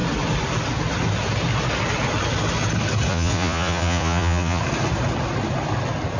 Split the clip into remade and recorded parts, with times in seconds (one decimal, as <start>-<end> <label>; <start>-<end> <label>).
0.0-3.1 recorded; 3.1-4.6 remade; 4.6-6.2 recorded